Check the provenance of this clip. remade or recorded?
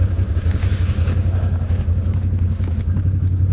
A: remade